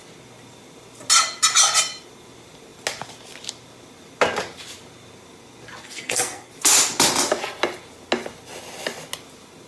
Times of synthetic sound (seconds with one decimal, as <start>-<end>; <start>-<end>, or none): 5.8-6.5